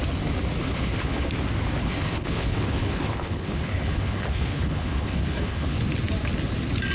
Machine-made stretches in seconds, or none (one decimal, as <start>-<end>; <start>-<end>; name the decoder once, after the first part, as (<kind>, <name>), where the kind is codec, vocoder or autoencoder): 0.6-1.3 (codec, HILCodec); 1.8-5.8